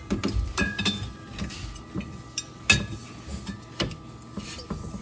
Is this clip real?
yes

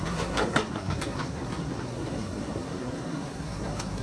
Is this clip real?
no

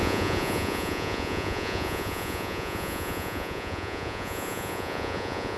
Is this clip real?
no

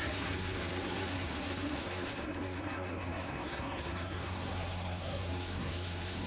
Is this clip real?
no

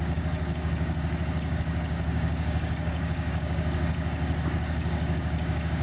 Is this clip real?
no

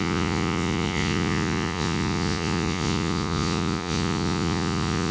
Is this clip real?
no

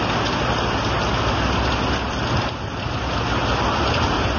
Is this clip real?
yes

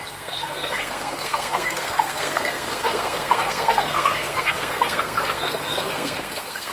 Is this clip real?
no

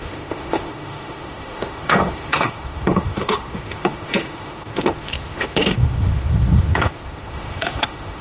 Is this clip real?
no